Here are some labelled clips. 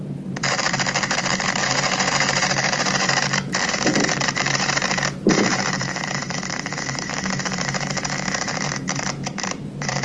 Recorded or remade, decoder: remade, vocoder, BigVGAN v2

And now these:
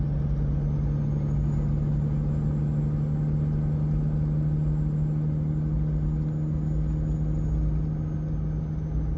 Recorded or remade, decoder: recorded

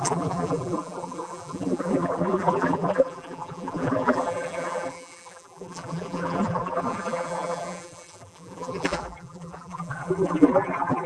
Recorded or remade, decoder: remade, vocoder, BigVGAN v2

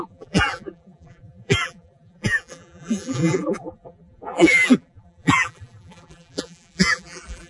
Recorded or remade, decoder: remade, vocoder, BigVGAN v2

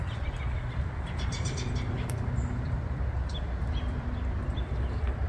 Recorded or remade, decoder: remade, vocoder, BigVGAN v2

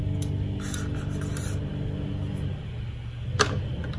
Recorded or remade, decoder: recorded